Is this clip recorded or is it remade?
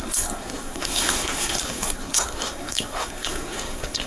remade